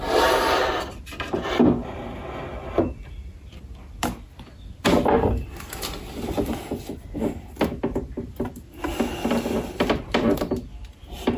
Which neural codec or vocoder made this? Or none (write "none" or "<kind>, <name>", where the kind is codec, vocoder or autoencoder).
none